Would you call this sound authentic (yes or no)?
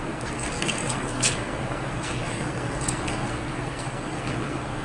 no